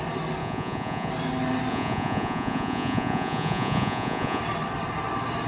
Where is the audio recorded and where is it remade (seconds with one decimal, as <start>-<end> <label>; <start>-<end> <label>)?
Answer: 0.0-0.4 recorded; 0.4-1.1 remade; 1.1-1.7 recorded; 1.7-4.4 remade; 4.4-5.5 recorded